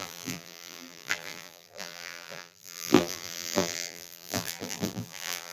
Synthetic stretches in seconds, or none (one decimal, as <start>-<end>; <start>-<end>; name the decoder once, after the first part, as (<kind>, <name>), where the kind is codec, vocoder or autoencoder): 0.0-5.5 (vocoder, BigVGAN v2)